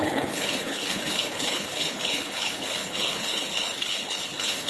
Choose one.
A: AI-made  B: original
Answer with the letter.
A